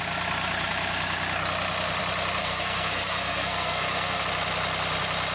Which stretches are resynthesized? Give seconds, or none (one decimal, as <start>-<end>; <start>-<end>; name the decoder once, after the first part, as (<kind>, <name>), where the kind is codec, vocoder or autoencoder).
2.4-4.2 (codec, SNAC)

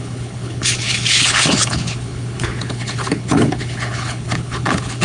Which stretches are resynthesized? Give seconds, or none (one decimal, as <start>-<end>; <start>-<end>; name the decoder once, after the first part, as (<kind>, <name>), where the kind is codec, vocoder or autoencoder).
0.0-5.0 (codec, HILCodec)

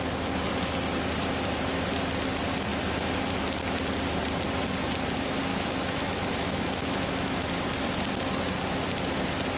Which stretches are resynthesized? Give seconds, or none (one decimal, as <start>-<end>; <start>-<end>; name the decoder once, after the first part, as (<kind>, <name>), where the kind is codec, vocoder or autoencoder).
5.5-7.6 (autoencoder, DAC-VAE)